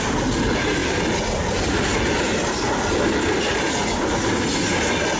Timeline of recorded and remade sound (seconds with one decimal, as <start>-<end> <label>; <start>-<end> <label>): 0.0-5.2 recorded